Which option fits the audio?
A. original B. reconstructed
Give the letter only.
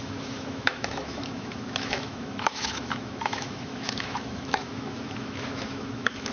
B